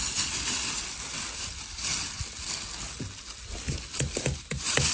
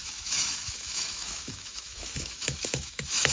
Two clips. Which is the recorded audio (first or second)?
first